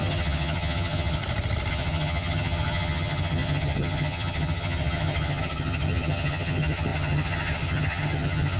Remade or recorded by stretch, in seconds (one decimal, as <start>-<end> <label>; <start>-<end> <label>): 0.0-1.2 remade; 1.2-1.7 recorded; 1.7-8.6 remade